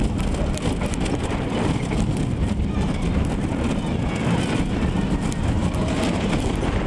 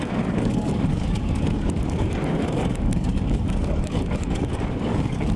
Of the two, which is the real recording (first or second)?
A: first